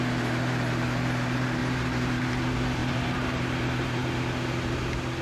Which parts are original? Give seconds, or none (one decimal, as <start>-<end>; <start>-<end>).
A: 0.0-2.8; 3.5-5.2